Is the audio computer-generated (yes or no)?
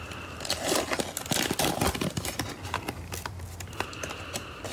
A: no